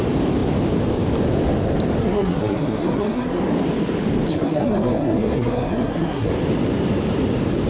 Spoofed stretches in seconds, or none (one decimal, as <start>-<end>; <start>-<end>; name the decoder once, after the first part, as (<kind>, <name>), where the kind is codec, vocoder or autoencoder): 2.0-3.4 (codec, SNAC); 4.3-6.3